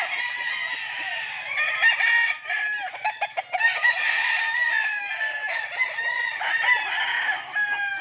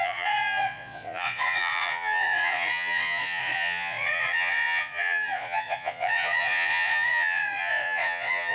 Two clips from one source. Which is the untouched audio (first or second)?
first